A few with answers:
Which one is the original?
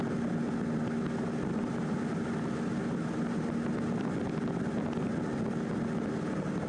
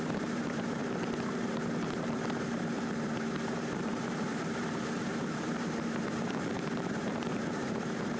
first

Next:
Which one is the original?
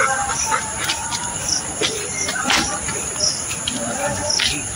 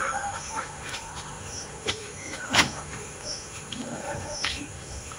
first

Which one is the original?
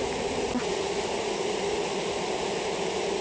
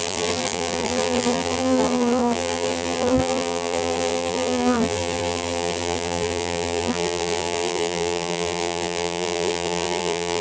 first